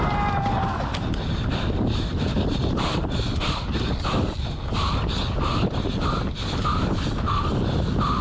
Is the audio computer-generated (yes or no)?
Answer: no